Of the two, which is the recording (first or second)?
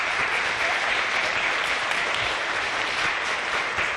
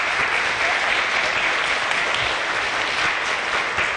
second